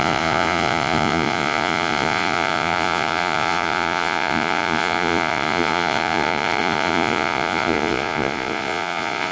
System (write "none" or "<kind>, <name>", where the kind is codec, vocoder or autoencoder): vocoder, Vocos